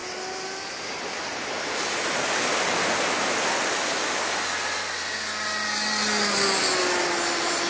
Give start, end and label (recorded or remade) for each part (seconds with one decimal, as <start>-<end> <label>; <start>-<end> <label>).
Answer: 0.0-7.7 recorded